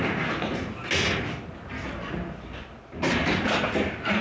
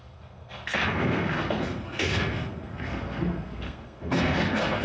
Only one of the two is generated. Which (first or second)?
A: second